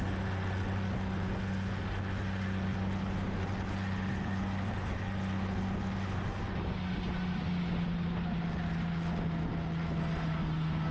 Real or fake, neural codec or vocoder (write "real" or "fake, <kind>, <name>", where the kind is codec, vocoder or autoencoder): real